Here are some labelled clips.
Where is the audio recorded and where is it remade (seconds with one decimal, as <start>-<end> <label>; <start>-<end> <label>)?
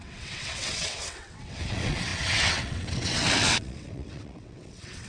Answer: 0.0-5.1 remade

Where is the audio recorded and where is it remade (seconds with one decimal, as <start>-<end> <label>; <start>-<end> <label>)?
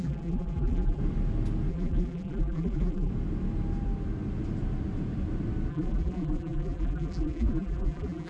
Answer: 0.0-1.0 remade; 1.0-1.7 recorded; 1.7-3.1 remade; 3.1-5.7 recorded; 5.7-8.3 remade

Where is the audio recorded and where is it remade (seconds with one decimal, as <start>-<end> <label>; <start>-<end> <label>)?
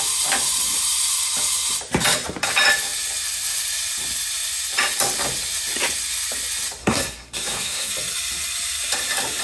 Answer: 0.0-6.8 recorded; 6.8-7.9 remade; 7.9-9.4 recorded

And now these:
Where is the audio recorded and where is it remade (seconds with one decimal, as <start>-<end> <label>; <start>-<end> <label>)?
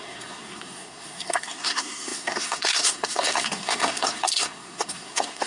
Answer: 0.0-5.5 remade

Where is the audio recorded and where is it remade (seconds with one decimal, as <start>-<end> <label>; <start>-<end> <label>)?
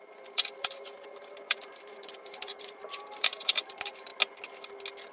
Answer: 0.0-4.1 remade; 4.1-5.1 recorded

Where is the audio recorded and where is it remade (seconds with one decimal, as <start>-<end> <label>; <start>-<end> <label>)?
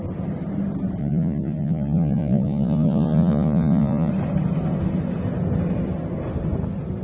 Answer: 0.0-1.0 recorded; 1.0-4.1 remade; 4.1-7.0 recorded